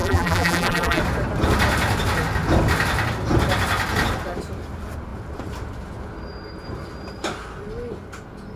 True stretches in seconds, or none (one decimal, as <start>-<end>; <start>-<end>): 1.0-8.6